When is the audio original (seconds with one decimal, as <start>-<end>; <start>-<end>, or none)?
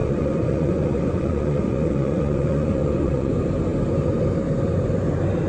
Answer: 3.3-5.5